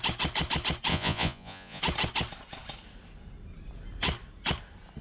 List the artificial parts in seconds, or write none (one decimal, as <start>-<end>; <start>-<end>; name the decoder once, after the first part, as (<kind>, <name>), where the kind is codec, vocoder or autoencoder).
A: 0.9-1.8 (vocoder, Vocos)